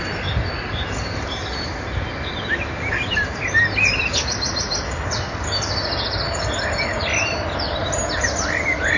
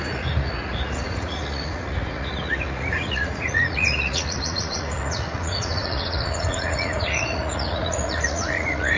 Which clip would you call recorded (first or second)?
first